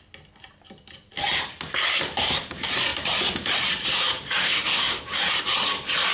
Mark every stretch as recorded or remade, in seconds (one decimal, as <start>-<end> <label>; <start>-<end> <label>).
0.0-4.4 recorded; 4.4-5.0 remade; 5.0-6.1 recorded